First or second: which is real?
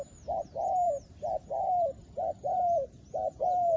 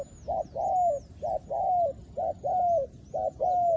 second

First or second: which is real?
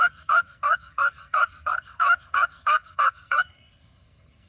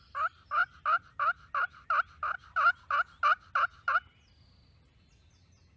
second